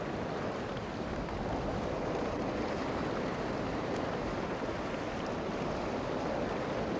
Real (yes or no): yes